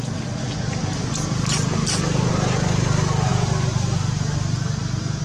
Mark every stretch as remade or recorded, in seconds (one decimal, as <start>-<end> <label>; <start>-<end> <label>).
0.0-5.2 recorded